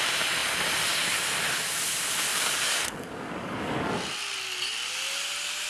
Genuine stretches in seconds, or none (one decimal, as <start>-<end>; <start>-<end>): 0.0-2.3; 3.9-5.7